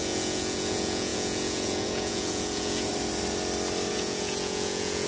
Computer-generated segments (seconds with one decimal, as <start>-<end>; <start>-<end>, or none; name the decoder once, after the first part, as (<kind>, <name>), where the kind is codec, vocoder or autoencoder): 0.0-2.9 (vocoder, Vocos); 3.9-5.1